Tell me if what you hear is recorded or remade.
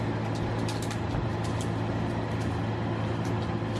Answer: recorded